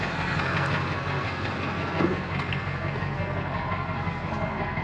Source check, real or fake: fake